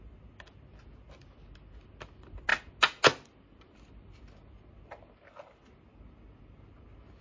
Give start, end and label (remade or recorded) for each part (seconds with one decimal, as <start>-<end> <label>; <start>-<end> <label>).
0.0-7.2 recorded